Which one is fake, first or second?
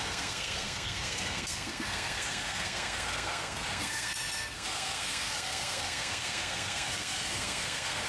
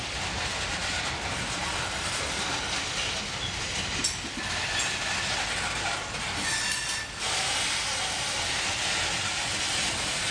first